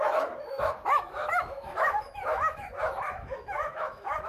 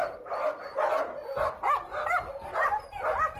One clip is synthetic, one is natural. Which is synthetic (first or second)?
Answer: first